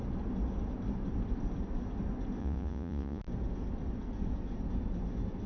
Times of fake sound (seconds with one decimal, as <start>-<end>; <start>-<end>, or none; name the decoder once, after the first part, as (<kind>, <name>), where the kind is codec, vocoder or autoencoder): 2.4-3.2 (vocoder, Vocos)